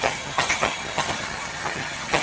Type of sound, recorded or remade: remade